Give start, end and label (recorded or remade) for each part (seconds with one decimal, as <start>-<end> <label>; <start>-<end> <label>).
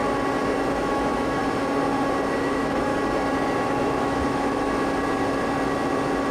0.0-0.9 recorded; 0.9-1.4 remade; 1.4-2.4 recorded; 2.4-2.9 remade; 2.9-3.8 recorded; 3.8-4.8 remade; 4.8-6.3 recorded